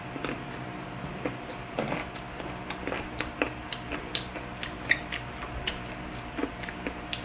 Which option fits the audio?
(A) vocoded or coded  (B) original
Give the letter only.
B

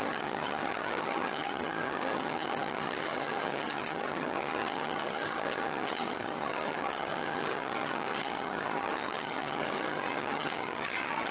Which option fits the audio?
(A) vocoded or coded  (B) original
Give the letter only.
A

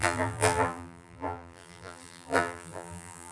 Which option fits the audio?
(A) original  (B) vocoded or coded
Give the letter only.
B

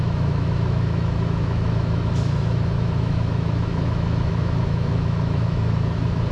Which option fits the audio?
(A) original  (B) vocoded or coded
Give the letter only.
B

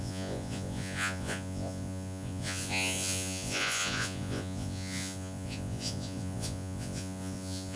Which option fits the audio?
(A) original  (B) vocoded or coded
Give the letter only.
B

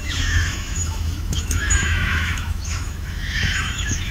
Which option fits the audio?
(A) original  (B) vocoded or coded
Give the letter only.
B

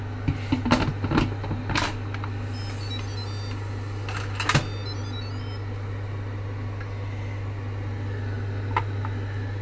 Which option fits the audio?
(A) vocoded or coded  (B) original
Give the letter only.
B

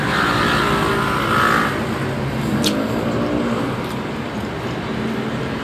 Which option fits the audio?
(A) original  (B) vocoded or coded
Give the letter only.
A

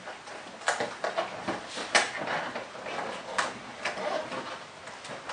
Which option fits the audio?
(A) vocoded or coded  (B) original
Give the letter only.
B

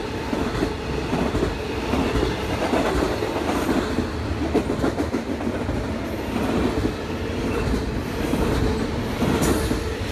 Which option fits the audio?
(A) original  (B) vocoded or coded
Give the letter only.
A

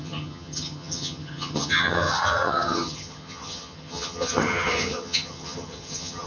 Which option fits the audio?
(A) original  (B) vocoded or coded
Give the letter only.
B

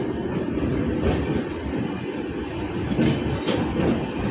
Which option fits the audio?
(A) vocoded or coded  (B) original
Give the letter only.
B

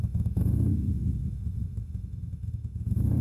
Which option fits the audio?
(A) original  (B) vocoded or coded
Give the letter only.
B